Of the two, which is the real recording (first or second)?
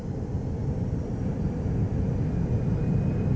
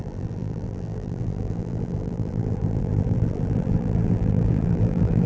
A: first